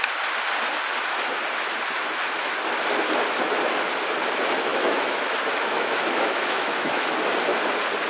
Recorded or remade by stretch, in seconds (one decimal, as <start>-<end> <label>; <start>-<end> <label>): 0.0-4.7 recorded; 4.7-7.1 remade; 7.1-8.1 recorded